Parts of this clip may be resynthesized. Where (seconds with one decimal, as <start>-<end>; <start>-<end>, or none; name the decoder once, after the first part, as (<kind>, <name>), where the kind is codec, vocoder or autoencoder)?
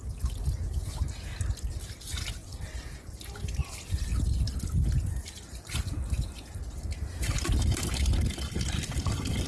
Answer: none